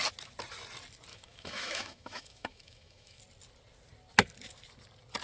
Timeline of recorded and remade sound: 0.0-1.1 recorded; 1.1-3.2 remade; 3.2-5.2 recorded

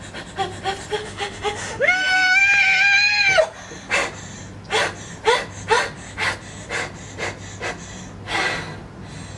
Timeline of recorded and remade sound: 0.0-1.0 recorded; 1.0-2.4 remade; 2.4-9.4 recorded

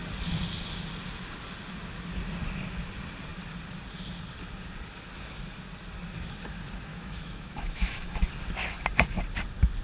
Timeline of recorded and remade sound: 0.0-6.9 recorded; 6.9-8.3 remade; 8.3-9.8 recorded

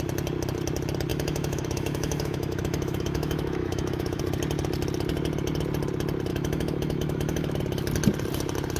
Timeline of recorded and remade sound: 0.0-1.1 recorded; 1.1-4.2 remade; 4.2-6.3 recorded; 6.3-7.6 remade; 7.6-8.8 recorded

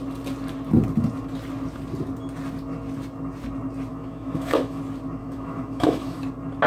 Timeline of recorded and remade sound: 0.0-3.9 recorded; 3.9-4.8 remade; 4.8-5.2 recorded; 5.2-6.2 remade; 6.2-6.7 recorded

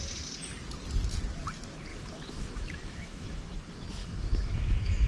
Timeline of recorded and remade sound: 0.0-1.9 recorded; 1.9-3.4 remade; 3.4-4.0 recorded; 4.0-5.1 remade